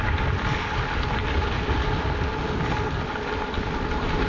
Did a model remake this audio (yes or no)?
no